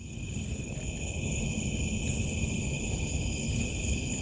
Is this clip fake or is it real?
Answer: real